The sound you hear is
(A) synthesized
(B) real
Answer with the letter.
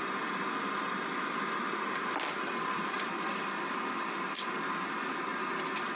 B